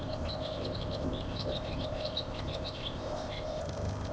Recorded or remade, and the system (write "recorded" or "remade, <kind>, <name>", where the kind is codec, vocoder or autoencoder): remade, codec, ZipCodec